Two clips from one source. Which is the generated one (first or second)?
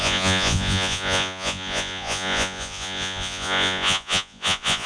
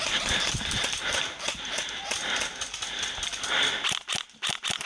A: first